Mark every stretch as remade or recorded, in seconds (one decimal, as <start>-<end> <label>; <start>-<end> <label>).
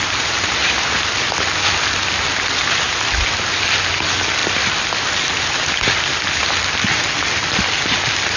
0.0-8.4 recorded